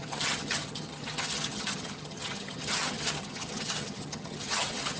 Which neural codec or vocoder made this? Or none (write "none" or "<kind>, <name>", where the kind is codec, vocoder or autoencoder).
vocoder, HiFi-GAN